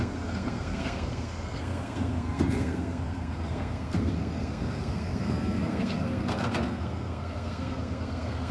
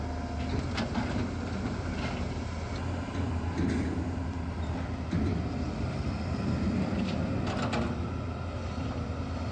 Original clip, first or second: second